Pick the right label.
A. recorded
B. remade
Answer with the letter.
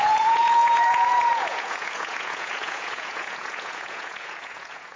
B